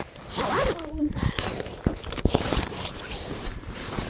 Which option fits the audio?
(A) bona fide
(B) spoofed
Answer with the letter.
B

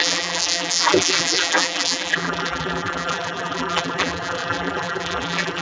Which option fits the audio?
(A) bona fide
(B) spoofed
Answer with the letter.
B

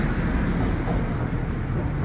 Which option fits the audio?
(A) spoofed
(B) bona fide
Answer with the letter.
B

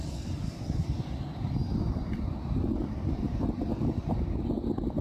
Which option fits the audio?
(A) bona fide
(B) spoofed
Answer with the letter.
A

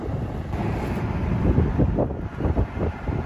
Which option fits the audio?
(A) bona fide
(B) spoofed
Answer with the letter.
B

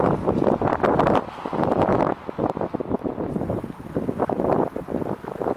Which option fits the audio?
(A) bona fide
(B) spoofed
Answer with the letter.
A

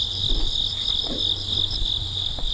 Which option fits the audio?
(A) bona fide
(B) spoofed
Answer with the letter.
B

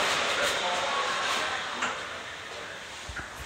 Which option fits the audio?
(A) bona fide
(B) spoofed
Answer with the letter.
B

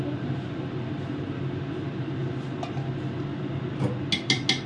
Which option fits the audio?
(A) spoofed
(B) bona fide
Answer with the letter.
B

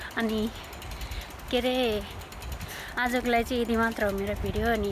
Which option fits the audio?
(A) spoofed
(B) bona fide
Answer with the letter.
B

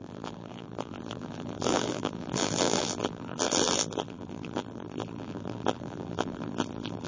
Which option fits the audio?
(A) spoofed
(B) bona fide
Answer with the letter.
A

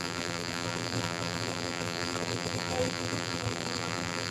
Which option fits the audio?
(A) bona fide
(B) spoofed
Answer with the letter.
B